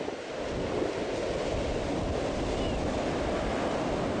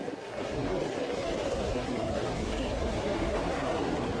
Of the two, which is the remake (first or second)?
second